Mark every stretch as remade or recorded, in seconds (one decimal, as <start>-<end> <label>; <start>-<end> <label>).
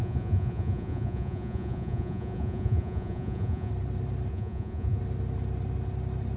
0.0-3.7 remade; 3.7-4.3 recorded; 4.3-5.0 remade; 5.0-6.4 recorded